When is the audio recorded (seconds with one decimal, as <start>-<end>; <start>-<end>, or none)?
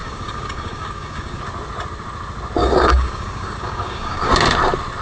1.4-2.6; 4.3-5.0